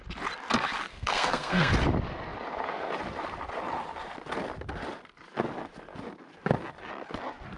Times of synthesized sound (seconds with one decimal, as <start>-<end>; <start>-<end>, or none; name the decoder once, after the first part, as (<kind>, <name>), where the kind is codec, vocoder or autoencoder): 0.9-1.7 (codec, SNAC)